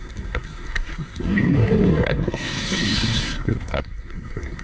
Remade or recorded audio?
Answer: remade